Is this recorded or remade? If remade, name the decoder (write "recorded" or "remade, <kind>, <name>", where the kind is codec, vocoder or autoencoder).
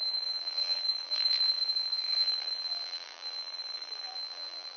remade, vocoder, BigVGAN v2